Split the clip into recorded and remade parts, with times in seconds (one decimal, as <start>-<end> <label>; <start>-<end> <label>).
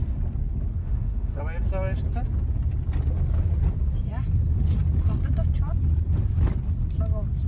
0.0-0.8 recorded; 0.8-1.4 remade; 1.4-7.5 recorded